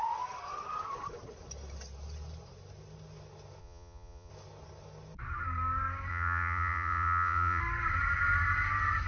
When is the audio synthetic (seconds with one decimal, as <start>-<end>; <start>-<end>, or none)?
3.6-4.3; 6.1-7.6